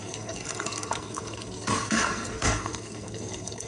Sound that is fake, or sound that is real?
fake